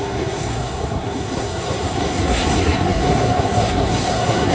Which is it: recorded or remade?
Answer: remade